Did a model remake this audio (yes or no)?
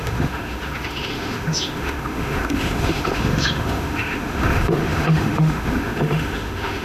yes